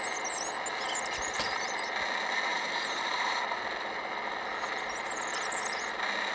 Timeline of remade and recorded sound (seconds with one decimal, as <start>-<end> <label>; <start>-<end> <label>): 0.0-2.5 recorded; 2.5-3.4 remade; 3.4-6.3 recorded